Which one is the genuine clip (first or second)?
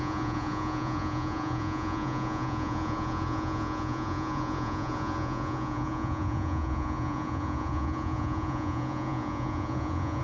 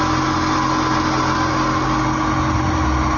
second